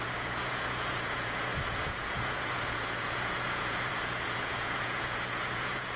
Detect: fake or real fake